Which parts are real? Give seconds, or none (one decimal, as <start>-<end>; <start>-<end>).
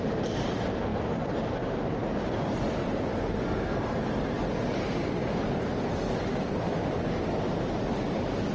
0.0-8.5